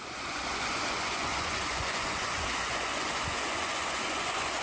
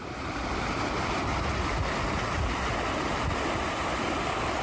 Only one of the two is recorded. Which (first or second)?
second